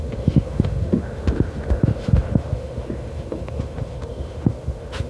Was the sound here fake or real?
fake